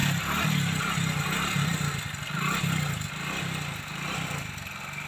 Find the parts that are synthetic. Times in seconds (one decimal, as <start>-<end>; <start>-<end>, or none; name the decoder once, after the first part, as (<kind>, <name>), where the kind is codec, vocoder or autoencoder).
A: none